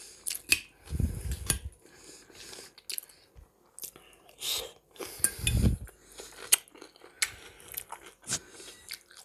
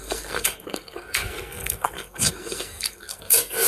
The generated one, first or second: second